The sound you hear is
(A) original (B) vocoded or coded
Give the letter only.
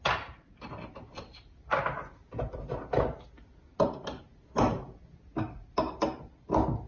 A